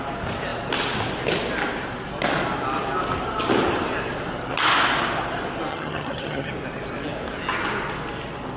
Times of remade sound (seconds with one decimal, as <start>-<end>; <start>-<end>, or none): 5.7-6.5